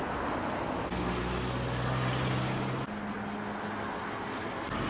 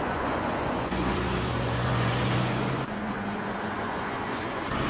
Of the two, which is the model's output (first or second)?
second